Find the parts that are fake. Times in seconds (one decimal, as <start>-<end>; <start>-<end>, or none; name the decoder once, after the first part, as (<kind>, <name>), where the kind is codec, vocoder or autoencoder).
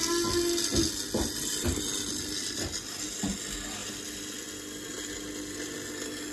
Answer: none